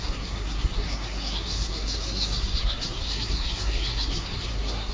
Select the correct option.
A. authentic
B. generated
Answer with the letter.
B